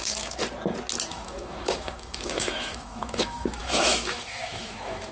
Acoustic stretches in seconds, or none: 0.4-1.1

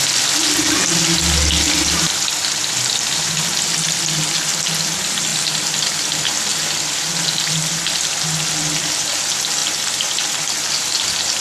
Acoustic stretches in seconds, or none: 0.0-11.4

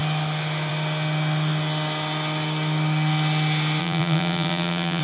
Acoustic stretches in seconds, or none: 0.0-3.8

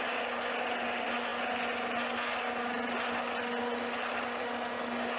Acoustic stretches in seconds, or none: 0.0-5.2

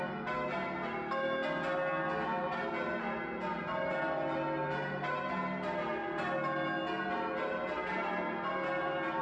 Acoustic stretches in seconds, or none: 0.0-3.5; 4.0-9.2

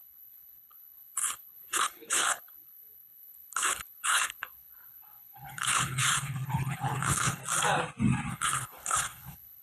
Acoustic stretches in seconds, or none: 7.4-8.3

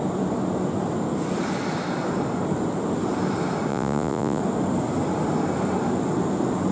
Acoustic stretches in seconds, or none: 0.0-3.7; 4.4-6.7

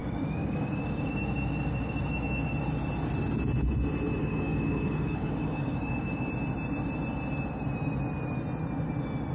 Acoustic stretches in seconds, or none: 2.6-4.2; 6.3-9.3